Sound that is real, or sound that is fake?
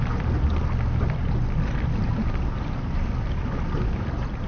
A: real